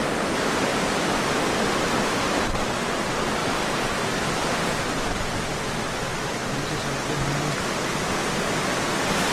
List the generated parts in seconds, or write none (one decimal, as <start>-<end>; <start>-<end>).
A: 0.7-1.3; 3.4-4.5